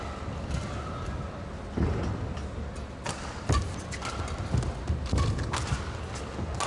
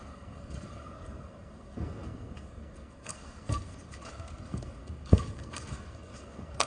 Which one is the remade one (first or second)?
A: second